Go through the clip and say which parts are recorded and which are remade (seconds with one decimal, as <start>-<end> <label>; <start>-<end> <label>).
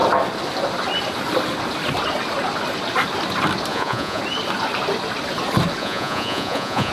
0.0-3.7 recorded; 3.7-4.2 remade; 4.2-5.8 recorded; 5.8-6.9 remade